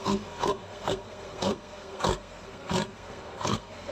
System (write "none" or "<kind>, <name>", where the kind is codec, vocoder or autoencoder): codec, SNAC